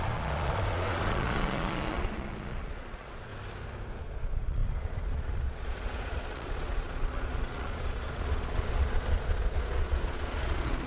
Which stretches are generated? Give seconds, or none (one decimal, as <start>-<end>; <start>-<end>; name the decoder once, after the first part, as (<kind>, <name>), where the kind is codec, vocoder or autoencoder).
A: 0.0-3.3 (vocoder, Vocos); 4.0-10.9